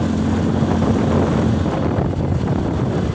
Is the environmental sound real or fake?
real